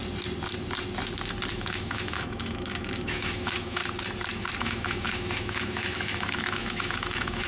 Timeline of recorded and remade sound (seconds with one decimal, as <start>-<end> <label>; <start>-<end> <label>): 0.0-1.5 recorded; 1.5-3.8 remade; 3.8-4.6 recorded; 4.6-7.5 remade